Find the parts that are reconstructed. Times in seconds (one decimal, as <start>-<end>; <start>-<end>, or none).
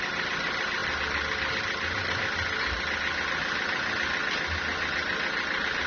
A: none